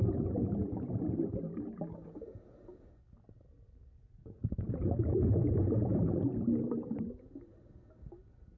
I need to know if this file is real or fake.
real